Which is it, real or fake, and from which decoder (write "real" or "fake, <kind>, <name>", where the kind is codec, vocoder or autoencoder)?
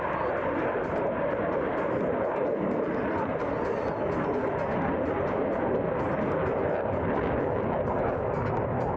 real